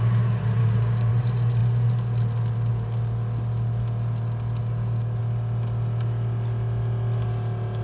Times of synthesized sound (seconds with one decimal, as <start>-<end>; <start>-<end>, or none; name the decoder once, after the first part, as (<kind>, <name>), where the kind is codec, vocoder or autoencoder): 0.6-1.1 (codec, DAC); 4.6-5.2